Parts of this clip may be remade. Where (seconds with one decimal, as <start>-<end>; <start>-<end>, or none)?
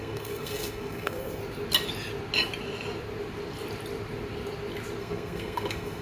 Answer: 0.0-1.4; 5.0-6.0